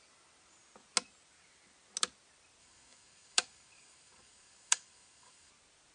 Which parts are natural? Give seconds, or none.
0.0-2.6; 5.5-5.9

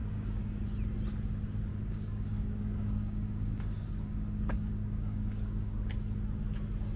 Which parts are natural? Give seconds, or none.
0.6-1.7; 5.9-7.0

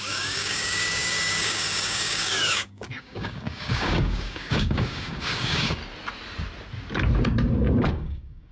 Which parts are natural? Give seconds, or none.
5.8-7.9

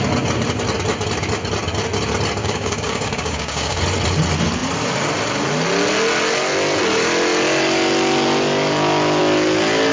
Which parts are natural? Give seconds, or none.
0.0-2.4; 3.8-9.9